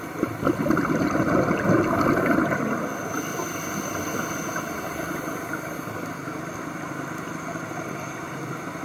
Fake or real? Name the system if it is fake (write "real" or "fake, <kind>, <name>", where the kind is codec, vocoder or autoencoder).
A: real